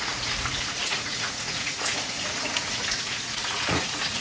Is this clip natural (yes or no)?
no